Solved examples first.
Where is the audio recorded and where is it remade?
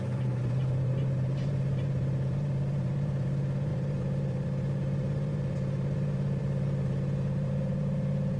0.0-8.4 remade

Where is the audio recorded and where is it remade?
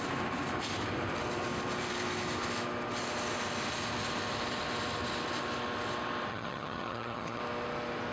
0.0-6.3 recorded; 6.3-7.4 remade; 7.4-8.1 recorded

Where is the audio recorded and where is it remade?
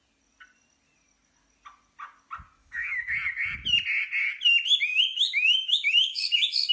0.0-2.6 recorded; 2.6-3.1 remade; 3.1-4.9 recorded; 4.9-6.7 remade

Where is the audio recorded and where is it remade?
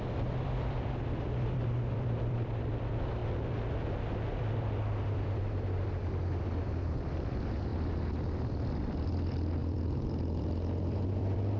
0.0-3.2 remade; 3.2-4.5 recorded; 4.5-7.7 remade; 7.7-8.8 recorded; 8.8-11.6 remade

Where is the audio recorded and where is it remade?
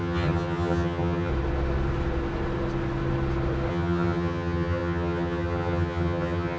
0.0-1.3 remade; 1.3-3.7 recorded; 3.7-6.6 remade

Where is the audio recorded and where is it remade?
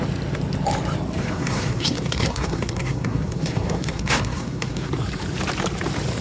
0.0-1.2 recorded; 1.2-4.9 remade; 4.9-6.2 recorded